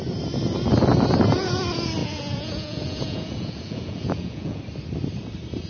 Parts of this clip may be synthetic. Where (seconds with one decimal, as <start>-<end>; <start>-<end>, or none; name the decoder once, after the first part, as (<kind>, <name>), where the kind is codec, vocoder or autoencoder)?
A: 2.0-4.6 (vocoder, Vocos)